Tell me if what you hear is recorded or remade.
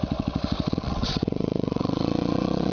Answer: remade